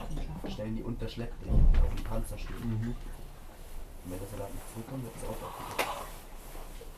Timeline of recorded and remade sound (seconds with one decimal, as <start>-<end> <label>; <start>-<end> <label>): 0.0-7.0 recorded